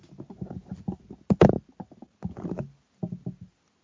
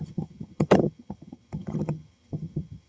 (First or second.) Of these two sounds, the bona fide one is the first